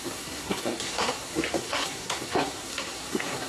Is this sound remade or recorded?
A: remade